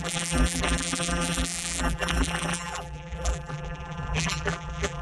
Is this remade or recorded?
remade